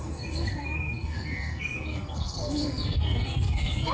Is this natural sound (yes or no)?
no